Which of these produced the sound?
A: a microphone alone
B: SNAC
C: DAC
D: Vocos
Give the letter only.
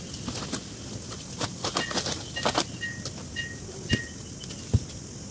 A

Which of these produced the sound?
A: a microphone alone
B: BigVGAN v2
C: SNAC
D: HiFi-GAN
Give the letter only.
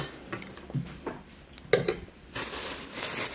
A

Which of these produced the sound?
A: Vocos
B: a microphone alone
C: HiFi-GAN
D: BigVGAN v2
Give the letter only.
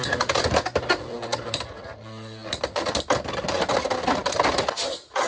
B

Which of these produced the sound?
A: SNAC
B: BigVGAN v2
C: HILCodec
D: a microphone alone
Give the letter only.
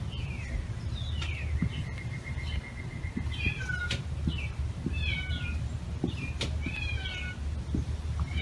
D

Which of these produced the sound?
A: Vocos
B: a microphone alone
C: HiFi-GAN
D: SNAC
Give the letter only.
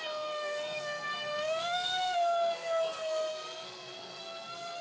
D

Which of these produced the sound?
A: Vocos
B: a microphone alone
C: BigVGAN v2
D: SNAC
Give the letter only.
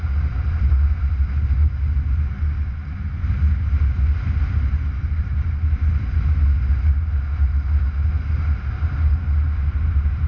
B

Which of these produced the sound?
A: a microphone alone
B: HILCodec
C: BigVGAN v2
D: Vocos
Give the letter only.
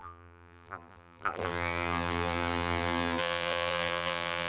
C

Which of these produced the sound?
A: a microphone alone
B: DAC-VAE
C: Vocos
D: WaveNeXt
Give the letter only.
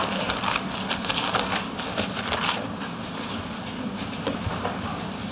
A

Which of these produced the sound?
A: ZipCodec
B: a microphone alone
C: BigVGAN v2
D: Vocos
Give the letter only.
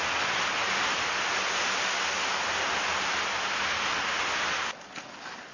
B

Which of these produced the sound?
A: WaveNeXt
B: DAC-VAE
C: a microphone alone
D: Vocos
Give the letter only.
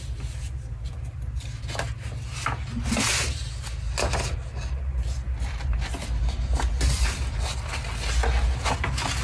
C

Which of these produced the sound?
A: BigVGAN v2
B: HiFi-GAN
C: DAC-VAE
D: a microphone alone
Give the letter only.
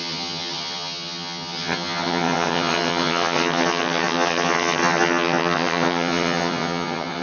B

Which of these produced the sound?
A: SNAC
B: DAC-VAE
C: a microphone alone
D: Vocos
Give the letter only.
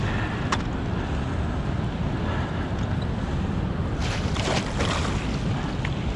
C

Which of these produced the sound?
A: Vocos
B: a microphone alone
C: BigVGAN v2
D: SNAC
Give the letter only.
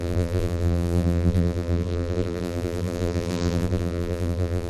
C